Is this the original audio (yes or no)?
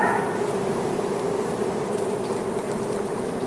no